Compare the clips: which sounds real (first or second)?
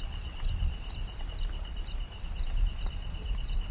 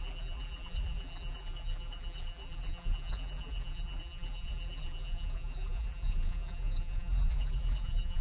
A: first